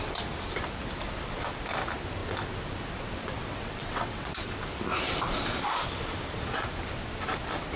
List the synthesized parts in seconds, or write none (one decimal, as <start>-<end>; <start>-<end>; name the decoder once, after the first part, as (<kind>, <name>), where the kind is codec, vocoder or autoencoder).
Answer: 3.4-4.6 (vocoder, WaveNeXt)